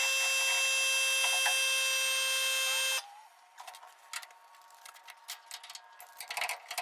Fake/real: real